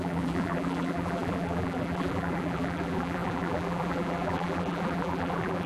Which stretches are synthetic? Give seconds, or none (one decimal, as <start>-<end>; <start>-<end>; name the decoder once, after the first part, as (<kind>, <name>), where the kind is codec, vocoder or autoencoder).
0.0-5.7 (vocoder, BigVGAN v2)